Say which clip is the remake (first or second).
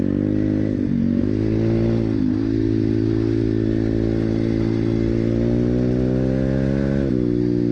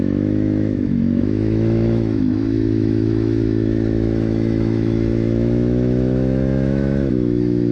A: second